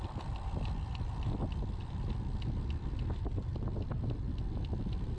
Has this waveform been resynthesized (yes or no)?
no